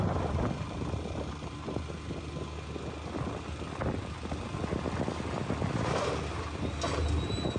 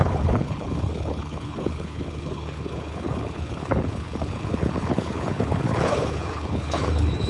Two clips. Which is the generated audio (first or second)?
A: second